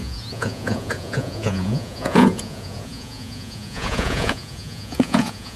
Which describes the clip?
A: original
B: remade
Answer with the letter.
B